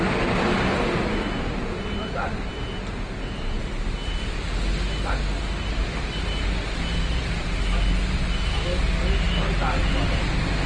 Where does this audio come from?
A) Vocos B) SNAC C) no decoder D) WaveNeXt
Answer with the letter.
C